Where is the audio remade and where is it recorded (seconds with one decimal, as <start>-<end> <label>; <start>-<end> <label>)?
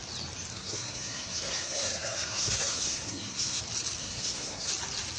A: 0.0-0.5 recorded; 0.5-3.6 remade; 3.6-4.0 recorded; 4.0-4.7 remade; 4.7-5.2 recorded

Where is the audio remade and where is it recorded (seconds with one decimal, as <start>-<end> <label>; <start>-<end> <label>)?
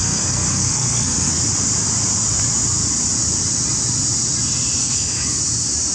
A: 0.0-1.4 remade; 1.4-4.8 recorded; 4.8-5.4 remade; 5.4-5.9 recorded